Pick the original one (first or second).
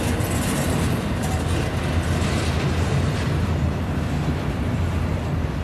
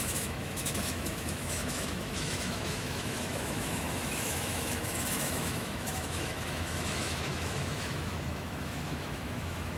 first